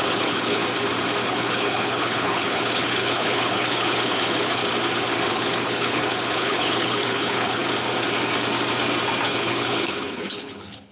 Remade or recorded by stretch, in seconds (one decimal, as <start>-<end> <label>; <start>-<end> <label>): 0.0-0.6 remade; 0.6-1.3 recorded; 1.3-4.6 remade; 4.6-5.3 recorded; 5.3-7.6 remade; 7.6-9.2 recorded; 9.2-10.9 remade